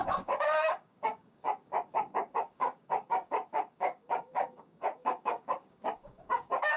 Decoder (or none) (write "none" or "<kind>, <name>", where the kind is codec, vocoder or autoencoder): codec, DAC